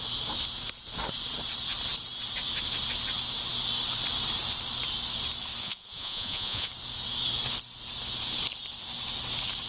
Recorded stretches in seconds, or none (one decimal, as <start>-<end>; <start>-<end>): 0.0-5.6; 6.7-9.7